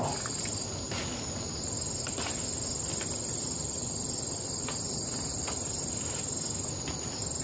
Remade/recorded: recorded